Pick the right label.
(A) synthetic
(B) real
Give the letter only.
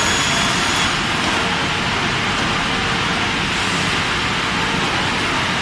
B